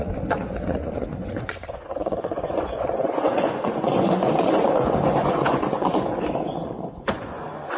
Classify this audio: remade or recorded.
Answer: remade